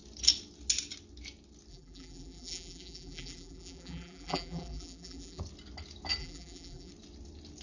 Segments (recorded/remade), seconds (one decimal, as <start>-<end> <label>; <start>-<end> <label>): 0.0-1.7 recorded; 1.7-5.4 remade; 5.4-6.2 recorded; 6.2-6.9 remade; 6.9-7.6 recorded